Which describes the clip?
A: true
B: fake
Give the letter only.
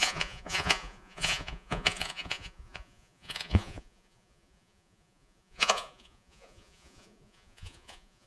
B